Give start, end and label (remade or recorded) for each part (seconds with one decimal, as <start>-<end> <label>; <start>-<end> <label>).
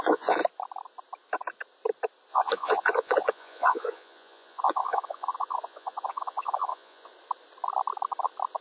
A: 0.0-0.4 remade; 0.4-2.3 recorded; 2.3-7.1 remade; 7.1-8.6 recorded